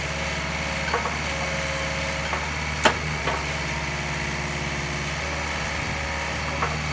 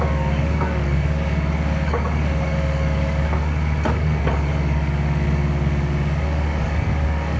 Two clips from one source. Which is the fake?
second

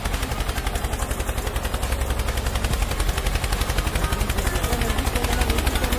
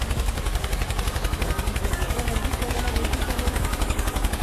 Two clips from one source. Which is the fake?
second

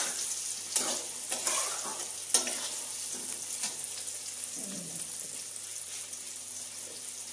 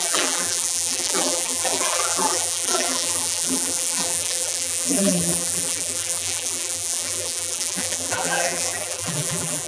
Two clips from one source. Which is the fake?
second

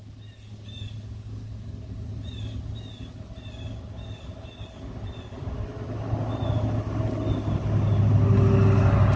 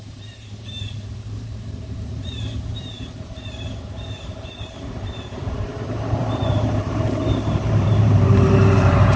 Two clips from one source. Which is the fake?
second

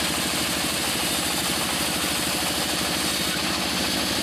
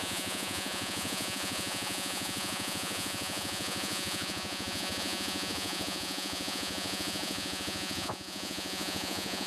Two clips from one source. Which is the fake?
second